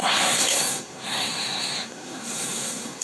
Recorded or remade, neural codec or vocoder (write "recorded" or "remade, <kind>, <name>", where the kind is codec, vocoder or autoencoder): remade, codec, SNAC